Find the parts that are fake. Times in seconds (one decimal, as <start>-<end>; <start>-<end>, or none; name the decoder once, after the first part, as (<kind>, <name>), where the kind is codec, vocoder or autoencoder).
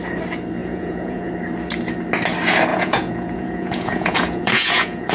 0.6-1.3 (vocoder, Vocos); 2.7-5.1